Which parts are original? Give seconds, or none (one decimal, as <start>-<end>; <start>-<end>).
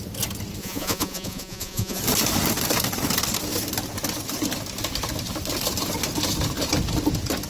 0.0-0.6; 2.0-7.5